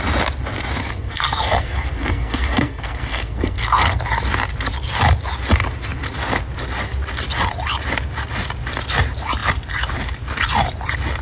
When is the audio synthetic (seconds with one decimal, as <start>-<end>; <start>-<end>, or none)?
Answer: 0.8-4.0